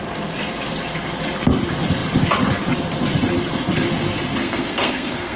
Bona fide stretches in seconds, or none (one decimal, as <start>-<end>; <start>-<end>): 0.0-4.4